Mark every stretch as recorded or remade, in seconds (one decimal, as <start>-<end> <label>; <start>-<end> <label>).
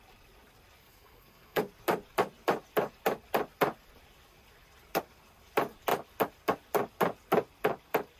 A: 0.0-0.8 recorded; 0.8-1.6 remade; 1.6-8.2 recorded